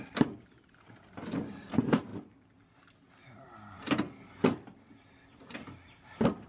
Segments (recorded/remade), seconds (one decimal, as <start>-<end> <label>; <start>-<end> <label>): 0.0-6.5 recorded